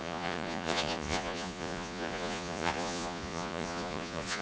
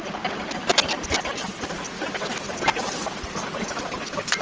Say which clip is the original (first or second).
second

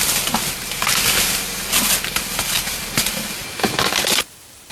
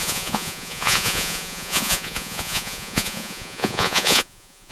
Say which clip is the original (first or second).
first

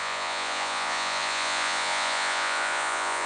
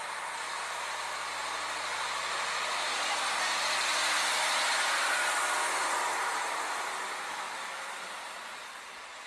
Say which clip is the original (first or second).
second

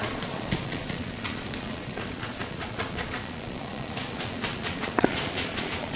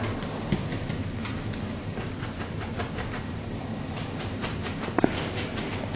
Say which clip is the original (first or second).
second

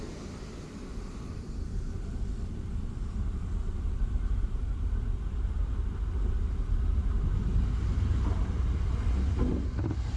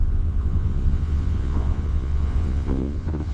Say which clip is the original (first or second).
first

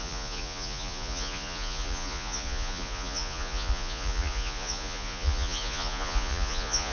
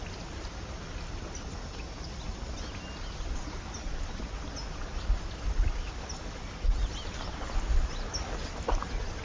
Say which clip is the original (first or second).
second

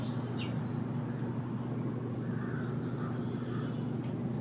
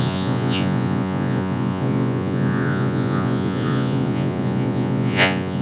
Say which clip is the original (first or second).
first